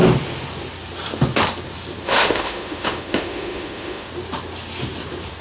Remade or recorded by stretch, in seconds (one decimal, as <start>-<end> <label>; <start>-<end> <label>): 0.0-2.0 recorded; 2.0-4.1 remade; 4.1-5.4 recorded